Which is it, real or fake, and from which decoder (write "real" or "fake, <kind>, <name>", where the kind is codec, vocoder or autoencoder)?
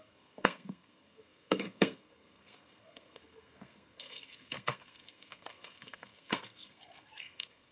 fake, codec, SNAC